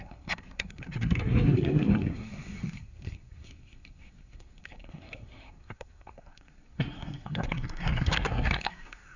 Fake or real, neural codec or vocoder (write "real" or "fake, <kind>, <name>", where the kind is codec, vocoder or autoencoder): fake, codec, SNAC